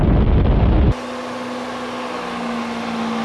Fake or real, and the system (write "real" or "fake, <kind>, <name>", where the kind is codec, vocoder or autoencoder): real